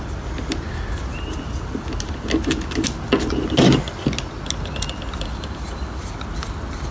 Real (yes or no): yes